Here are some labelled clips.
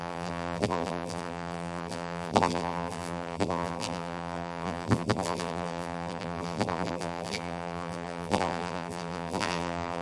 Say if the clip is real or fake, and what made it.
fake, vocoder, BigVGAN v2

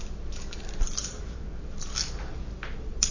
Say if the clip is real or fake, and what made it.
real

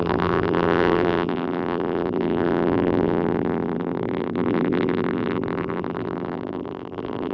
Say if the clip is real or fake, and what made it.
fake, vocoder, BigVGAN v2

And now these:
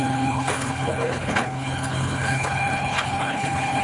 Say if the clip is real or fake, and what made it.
fake, codec, HILCodec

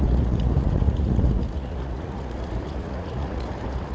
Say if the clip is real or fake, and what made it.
fake, vocoder, Vocos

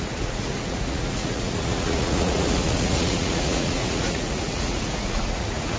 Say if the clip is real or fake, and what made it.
fake, vocoder, Vocos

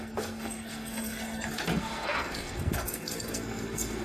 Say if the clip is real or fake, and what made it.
fake, codec, SNAC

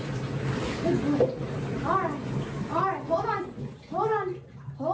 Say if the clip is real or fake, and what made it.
real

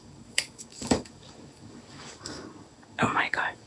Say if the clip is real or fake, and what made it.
fake, codec, DAC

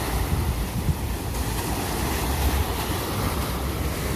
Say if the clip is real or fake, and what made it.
fake, vocoder, BigVGAN v2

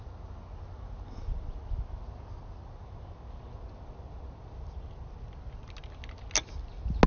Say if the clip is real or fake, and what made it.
real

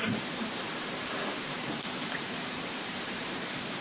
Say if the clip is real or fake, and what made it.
fake, vocoder, BigVGAN v2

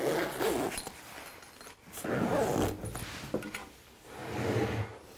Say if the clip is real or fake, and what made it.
real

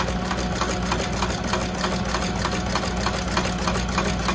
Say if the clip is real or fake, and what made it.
real